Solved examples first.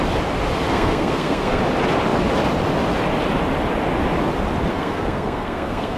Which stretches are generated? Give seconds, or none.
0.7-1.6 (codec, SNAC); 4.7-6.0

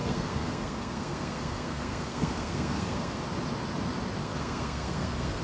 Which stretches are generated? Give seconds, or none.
0.0-3.2 (codec, SNAC); 4.2-5.4

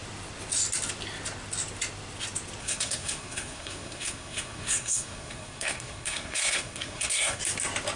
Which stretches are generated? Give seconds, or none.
2.6-7.4 (codec, SNAC)

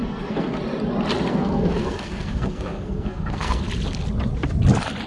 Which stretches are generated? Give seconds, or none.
0.0-0.6 (codec, SNAC); 1.3-3.6